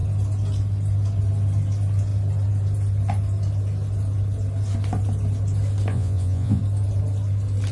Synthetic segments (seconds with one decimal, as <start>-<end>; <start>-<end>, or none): 5.9-6.6